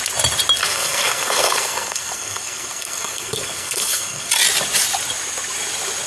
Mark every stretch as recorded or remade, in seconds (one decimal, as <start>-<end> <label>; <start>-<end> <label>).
0.0-0.6 recorded; 0.6-4.3 remade; 4.3-6.1 recorded